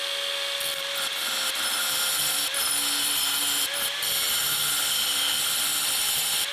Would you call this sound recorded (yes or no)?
yes